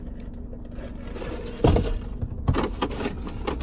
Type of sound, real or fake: real